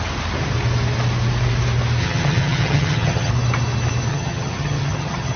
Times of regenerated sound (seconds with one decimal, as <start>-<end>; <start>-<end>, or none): 2.0-3.3; 4.1-5.4